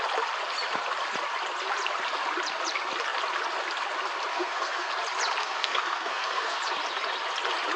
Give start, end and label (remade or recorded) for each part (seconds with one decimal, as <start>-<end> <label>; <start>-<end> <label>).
0.0-4.3 recorded; 4.3-4.9 remade; 4.9-5.4 recorded; 5.4-6.6 remade; 6.6-7.8 recorded